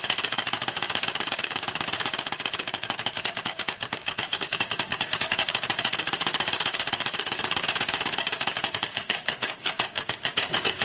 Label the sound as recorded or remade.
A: remade